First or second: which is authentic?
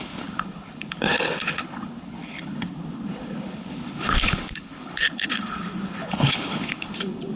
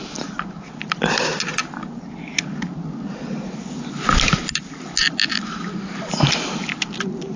second